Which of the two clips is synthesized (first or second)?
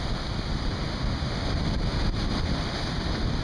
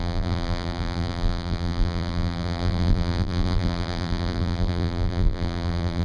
second